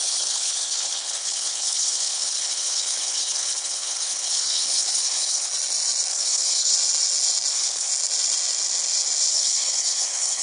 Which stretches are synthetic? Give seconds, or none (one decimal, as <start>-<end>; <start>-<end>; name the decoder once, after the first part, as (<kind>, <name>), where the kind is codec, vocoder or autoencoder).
0.0-5.5 (codec, HILCodec); 6.1-6.7; 7.5-7.9; 9.3-10.4